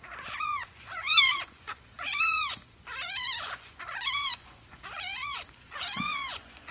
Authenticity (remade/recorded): remade